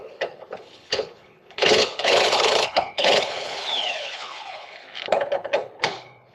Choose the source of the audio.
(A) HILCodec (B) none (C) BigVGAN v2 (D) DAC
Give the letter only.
A